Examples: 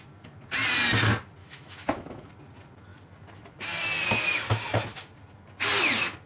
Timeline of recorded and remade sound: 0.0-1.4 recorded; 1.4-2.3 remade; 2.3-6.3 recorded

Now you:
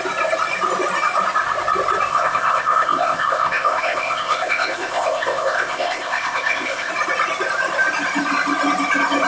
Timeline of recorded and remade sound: 0.0-2.1 recorded; 2.1-6.9 remade; 6.9-9.3 recorded

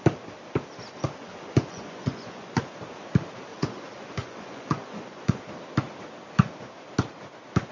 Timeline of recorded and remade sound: 0.0-1.2 recorded; 1.2-2.6 remade; 2.6-3.5 recorded; 3.5-5.4 remade; 5.4-7.7 recorded

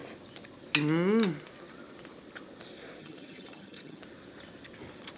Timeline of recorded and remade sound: 0.0-3.0 recorded; 3.0-4.0 remade; 4.0-5.2 recorded

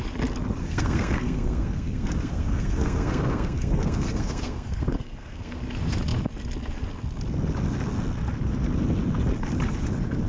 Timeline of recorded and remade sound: 0.0-0.6 recorded; 0.6-5.6 remade; 5.6-10.3 recorded